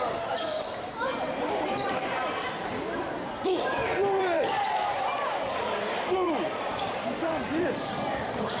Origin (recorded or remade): remade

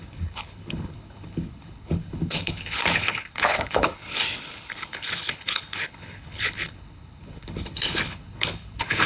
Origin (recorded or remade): remade